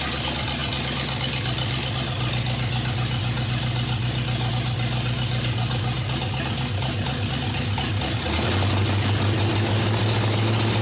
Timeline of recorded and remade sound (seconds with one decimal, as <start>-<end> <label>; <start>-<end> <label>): 0.0-10.8 recorded